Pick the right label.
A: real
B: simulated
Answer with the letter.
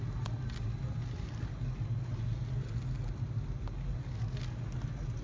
A